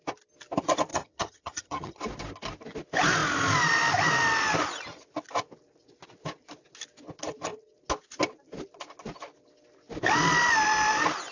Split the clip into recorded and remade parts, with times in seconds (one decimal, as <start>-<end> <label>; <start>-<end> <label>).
0.0-0.9 recorded; 0.9-2.0 remade; 2.0-11.3 recorded